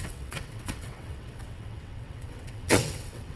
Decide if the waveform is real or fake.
fake